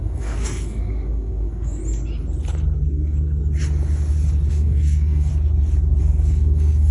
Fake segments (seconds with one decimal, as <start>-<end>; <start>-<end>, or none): 0.0-1.8; 2.9-3.4; 4.5-5.3; 6.0-6.9